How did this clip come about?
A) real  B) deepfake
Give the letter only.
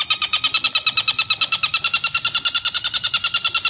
A